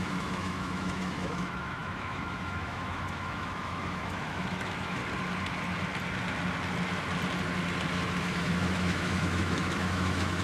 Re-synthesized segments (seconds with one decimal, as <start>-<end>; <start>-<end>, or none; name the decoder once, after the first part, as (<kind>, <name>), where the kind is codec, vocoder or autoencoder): 0.0-5.0 (autoencoder, DAC-VAE); 8.2-10.4